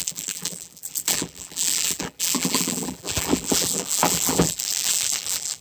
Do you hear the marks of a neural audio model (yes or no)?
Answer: yes